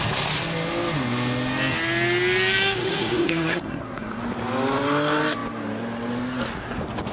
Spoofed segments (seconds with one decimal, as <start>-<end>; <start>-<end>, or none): 2.8-4.2